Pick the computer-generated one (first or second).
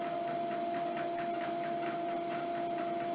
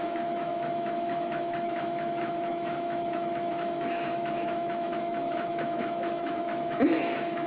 second